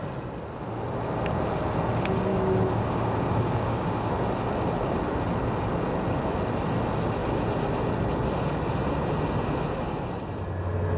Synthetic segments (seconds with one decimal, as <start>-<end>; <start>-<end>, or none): 2.3-4.1